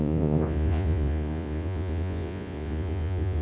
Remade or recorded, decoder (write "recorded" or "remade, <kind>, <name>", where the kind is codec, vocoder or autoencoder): remade, vocoder, Vocos